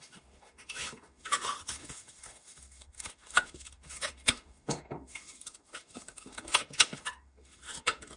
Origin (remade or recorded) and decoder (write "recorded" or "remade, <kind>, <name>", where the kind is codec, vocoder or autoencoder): remade, autoencoder, DAC-VAE